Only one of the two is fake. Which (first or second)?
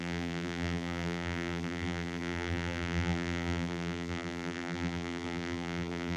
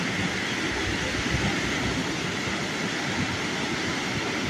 first